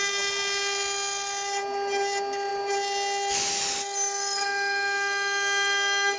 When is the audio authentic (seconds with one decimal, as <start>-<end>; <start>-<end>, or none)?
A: 0.0-6.2